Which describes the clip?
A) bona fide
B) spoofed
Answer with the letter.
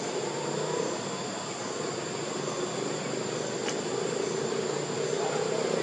A